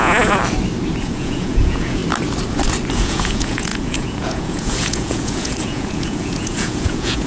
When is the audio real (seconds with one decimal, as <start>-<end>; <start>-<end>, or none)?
0.4-1.0; 2.0-2.9